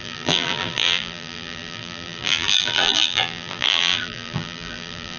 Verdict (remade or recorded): remade